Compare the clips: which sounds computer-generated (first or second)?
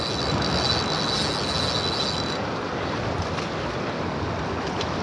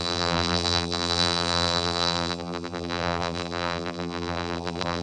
second